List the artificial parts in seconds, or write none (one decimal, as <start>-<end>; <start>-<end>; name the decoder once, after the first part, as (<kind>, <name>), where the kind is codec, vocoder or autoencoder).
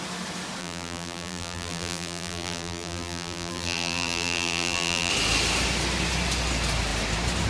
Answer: 0.6-5.1 (vocoder, BigVGAN v2)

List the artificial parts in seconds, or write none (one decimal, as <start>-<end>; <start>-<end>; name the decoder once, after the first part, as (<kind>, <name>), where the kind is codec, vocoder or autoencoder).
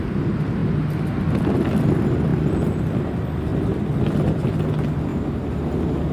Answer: 2.3-2.9 (vocoder, BigVGAN v2); 3.5-4.6; 5.1-6.1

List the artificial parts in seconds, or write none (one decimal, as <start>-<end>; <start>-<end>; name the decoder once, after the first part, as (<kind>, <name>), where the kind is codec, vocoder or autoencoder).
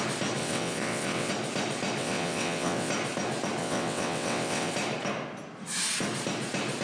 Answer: 0.4-1.3 (vocoder, WaveNeXt); 2.0-2.9; 3.6-4.7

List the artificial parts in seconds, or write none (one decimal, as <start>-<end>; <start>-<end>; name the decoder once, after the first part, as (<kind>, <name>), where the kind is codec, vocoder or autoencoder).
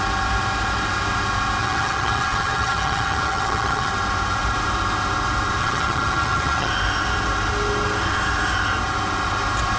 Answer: 1.6-3.9 (vocoder, HiFi-GAN); 5.6-6.7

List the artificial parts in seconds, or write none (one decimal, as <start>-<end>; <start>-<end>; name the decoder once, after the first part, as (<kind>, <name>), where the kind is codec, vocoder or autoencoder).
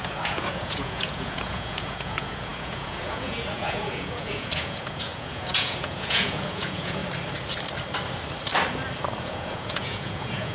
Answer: 0.0-7.0 (vocoder, Vocos); 9.2-10.5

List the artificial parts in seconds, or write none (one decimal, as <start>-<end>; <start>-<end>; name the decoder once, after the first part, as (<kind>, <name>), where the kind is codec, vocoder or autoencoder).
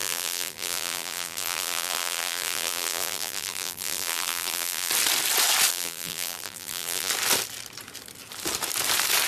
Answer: 0.0-4.9 (vocoder, BigVGAN v2); 5.7-7.1